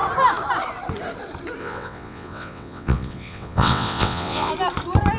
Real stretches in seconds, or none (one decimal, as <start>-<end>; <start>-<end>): 0.0-1.6; 4.5-5.2